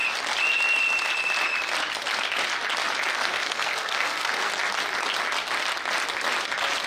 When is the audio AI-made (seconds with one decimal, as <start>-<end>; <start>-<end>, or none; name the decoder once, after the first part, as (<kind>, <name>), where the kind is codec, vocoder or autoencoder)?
3.2-4.5 (codec, SNAC)